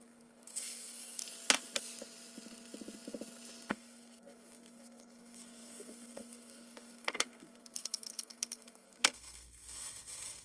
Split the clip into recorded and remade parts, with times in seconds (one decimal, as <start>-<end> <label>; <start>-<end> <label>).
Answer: 0.0-1.2 remade; 1.2-3.7 recorded; 3.7-10.4 remade